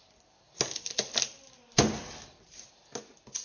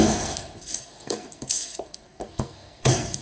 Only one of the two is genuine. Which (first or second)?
first